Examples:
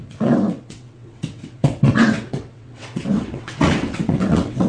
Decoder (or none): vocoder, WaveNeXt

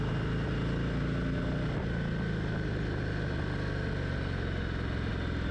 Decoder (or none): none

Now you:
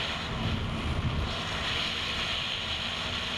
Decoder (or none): none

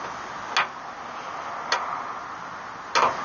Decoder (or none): none